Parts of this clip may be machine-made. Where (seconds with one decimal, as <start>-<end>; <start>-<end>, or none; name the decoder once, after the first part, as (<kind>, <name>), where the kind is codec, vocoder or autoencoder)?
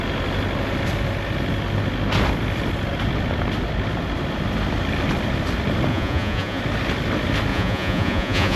5.9-6.6 (vocoder, Vocos); 7.5-8.6